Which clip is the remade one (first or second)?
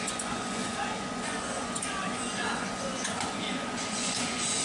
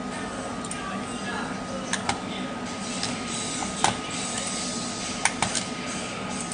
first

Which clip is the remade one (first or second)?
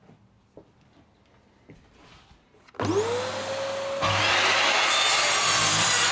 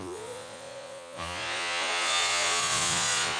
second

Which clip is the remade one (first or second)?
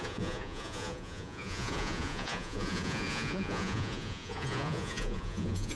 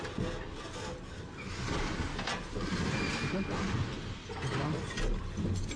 first